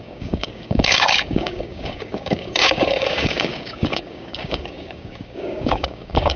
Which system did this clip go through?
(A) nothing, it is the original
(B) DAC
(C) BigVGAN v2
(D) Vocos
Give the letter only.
B